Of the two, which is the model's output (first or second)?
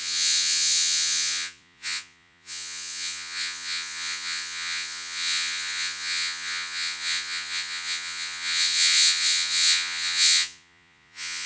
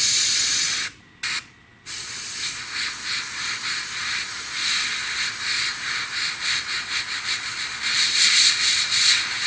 first